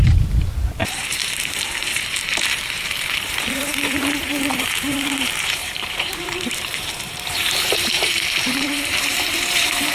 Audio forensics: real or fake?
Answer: fake